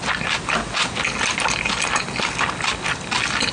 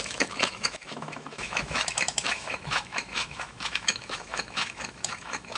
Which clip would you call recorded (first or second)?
first